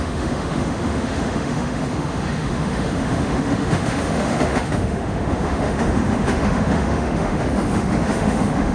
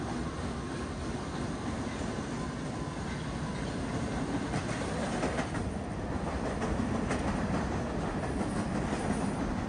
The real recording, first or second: second